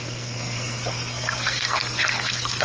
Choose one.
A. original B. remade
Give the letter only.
B